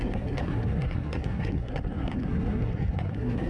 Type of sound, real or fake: fake